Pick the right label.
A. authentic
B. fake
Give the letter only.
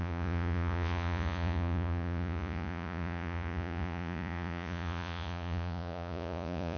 B